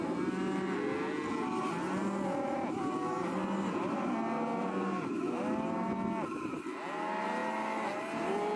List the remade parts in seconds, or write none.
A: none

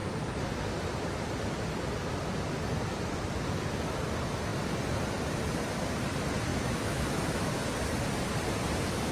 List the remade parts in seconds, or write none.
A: 6.5-7.5 (autoencoder, DAC-VAE)

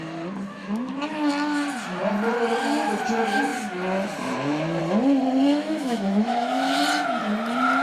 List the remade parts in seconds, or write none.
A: 0.6-1.3 (autoencoder, DAC-VAE); 5.5-6.8

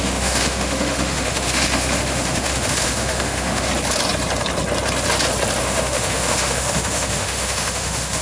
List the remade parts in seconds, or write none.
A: 0.0-3.7 (autoencoder, DAC-VAE); 5.6-8.2

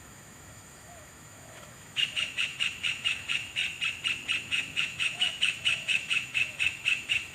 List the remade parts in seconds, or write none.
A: 0.0-3.6 (autoencoder, DAC-VAE); 4.4-7.3

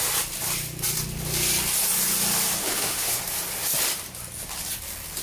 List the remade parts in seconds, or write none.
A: 2.6-3.2 (autoencoder, DAC-VAE)

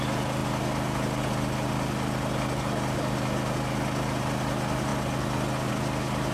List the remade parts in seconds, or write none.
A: none

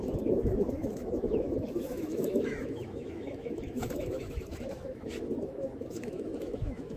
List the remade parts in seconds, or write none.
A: 0.0-7.0 (autoencoder, DAC-VAE)